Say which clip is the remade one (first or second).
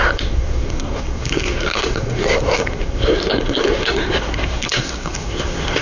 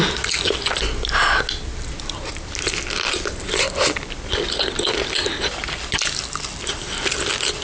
first